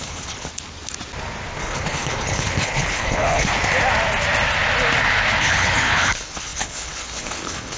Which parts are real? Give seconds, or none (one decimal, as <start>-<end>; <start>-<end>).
0.5-1.6; 3.5-5.4